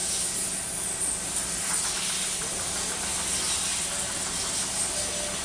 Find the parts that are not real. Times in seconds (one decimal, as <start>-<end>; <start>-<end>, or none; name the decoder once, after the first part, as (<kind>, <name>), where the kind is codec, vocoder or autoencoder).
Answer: none